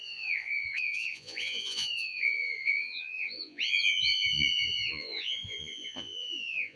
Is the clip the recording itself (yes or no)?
no